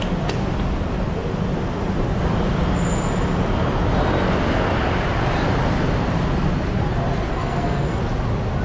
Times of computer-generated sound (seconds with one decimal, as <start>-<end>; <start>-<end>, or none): 7.3-8.0